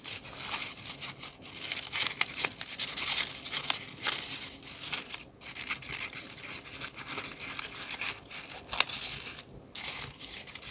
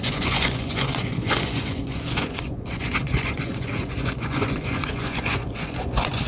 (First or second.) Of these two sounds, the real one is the first